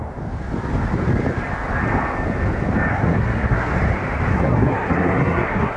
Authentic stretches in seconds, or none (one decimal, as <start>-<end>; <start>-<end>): 0.0-2.9; 3.8-4.3